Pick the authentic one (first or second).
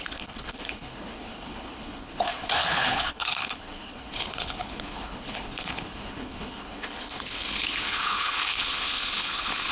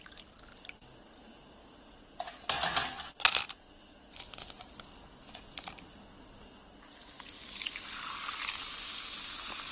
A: second